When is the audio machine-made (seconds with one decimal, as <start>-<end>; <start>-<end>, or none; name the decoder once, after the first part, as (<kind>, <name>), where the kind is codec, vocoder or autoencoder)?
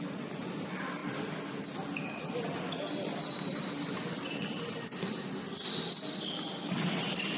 none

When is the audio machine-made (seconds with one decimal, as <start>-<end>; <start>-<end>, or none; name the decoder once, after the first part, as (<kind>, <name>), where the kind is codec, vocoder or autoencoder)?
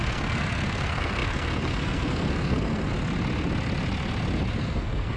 0.0-2.9 (codec, SNAC); 4.6-5.2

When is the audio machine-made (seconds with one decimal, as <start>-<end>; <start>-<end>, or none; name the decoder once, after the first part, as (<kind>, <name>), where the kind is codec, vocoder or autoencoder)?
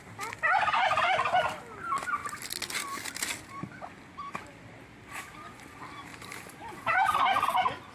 6.1-7.2 (vocoder, BigVGAN v2)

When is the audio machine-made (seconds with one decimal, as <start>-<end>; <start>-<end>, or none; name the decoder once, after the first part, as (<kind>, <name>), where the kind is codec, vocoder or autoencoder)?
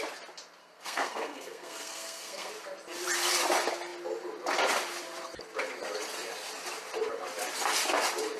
0.6-2.5 (codec, SNAC)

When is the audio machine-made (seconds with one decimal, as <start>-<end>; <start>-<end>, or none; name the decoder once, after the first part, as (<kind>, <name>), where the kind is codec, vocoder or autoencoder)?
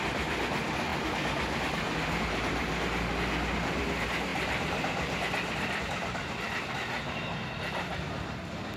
4.3-5.8 (vocoder, BigVGAN v2)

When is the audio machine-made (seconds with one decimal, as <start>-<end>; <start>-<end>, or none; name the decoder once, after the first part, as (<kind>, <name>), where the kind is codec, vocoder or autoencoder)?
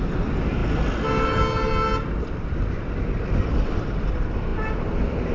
none